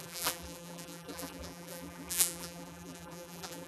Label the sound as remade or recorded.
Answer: remade